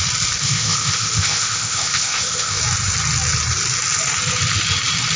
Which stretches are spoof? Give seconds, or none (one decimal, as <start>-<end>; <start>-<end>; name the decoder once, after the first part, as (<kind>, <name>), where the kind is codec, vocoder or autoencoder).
0.4-2.6 (codec, ZipCodec)